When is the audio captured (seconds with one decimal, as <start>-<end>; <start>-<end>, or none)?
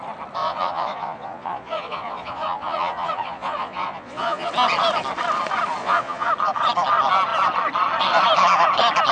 0.0-0.4; 4.5-5.8; 6.3-9.1